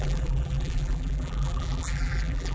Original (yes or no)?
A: no